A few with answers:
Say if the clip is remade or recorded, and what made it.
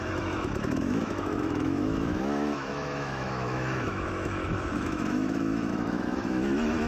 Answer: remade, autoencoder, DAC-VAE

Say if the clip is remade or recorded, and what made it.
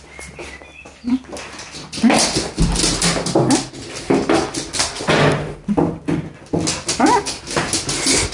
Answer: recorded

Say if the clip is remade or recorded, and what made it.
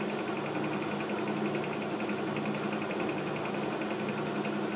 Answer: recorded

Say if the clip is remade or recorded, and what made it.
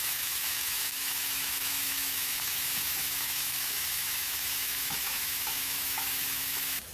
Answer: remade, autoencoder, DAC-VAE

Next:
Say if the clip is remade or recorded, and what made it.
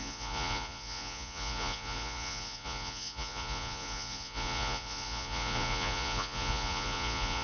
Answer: remade, vocoder, Vocos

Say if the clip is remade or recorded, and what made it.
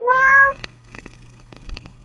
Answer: remade, codec, SNAC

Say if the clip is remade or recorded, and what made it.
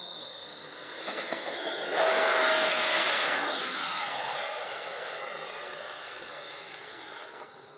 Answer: remade, codec, SNAC